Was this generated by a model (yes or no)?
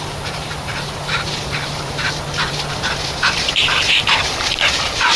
yes